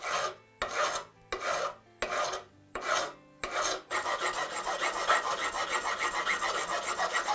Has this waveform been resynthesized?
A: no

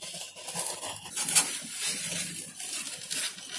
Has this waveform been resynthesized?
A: no